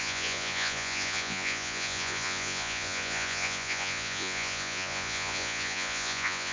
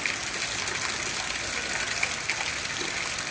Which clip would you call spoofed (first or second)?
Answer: first